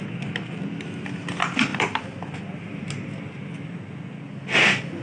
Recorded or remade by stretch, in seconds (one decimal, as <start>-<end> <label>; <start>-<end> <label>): 0.0-5.0 recorded